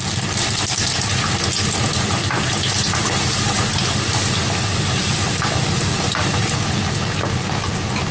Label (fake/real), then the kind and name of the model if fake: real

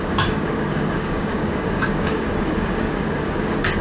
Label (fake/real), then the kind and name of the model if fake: fake, codec, DAC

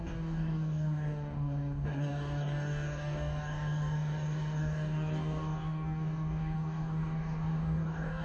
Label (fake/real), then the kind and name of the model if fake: fake, codec, DAC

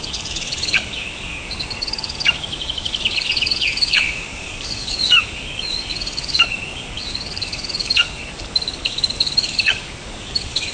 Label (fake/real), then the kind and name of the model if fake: fake, codec, DAC